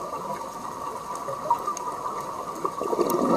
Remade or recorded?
recorded